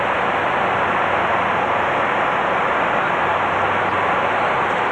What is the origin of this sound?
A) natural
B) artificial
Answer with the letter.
A